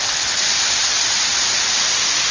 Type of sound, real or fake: real